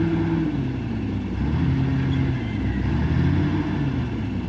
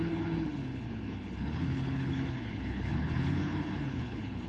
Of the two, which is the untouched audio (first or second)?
first